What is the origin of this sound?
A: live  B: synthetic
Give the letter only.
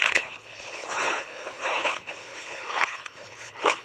B